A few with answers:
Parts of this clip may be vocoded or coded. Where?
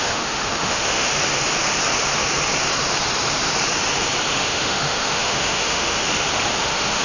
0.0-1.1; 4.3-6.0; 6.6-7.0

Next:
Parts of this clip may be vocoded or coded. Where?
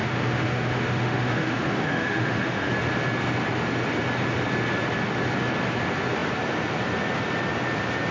0.0-2.7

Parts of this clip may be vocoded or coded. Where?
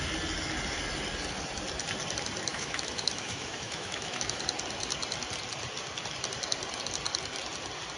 2.5-4.4